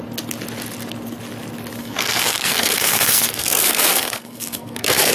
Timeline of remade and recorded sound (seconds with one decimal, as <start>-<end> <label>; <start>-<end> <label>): 0.0-1.8 recorded; 1.8-5.1 remade